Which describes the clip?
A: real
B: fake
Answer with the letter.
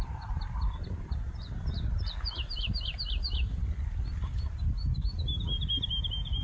A